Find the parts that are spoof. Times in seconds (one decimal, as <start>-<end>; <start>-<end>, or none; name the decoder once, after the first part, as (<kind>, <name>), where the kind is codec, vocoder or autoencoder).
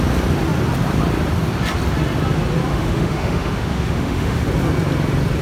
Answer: 2.7-4.5 (autoencoder, DAC-VAE)